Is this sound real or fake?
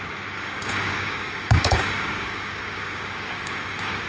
fake